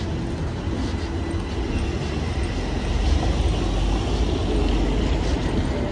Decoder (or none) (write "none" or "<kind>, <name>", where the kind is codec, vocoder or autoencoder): none